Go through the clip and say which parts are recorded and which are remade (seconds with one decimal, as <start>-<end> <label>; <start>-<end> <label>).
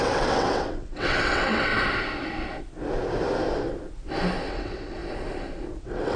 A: 0.0-1.7 remade; 1.7-4.5 recorded; 4.5-5.0 remade; 5.0-5.8 recorded; 5.8-6.2 remade